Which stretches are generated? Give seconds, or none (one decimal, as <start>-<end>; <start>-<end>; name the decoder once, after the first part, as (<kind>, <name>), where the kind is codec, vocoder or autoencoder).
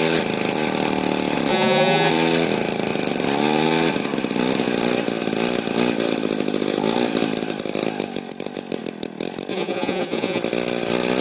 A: 1.5-2.1 (vocoder, Vocos); 9.5-10.4